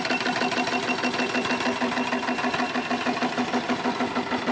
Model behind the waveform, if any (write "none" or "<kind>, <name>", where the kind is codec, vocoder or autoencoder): none